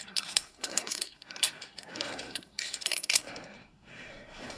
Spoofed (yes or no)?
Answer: yes